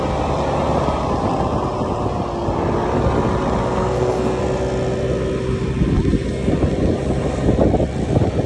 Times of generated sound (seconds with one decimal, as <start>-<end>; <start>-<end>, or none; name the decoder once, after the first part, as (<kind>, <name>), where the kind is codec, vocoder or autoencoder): 3.6-4.4 (codec, SNAC)